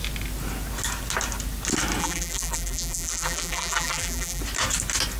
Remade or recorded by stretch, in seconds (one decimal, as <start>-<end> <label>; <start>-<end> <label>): 0.0-2.0 recorded; 2.0-4.4 remade; 4.4-5.2 recorded